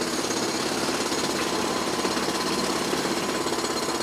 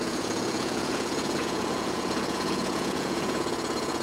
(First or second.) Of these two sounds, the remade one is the second